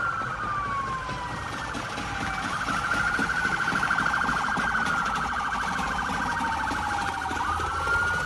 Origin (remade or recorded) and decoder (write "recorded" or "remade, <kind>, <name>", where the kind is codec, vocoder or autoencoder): recorded